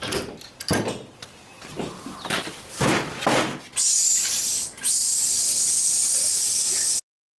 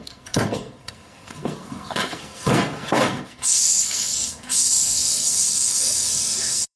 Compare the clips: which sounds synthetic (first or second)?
second